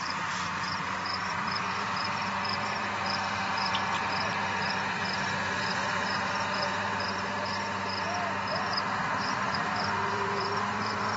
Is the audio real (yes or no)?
no